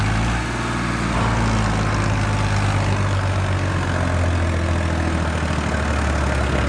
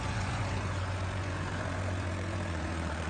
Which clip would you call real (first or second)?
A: first